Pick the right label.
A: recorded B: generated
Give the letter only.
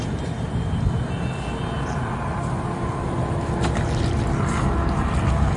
A